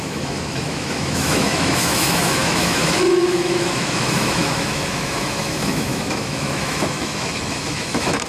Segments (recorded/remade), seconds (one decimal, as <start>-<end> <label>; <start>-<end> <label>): 0.0-8.3 remade

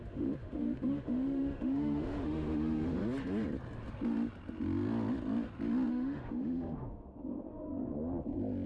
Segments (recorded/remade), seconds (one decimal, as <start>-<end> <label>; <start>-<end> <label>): 0.0-3.0 remade; 3.0-5.9 recorded; 5.9-7.9 remade; 7.9-8.7 recorded